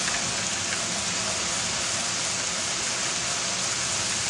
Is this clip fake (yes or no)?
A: no